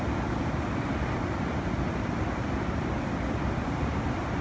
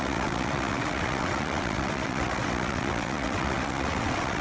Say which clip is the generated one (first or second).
second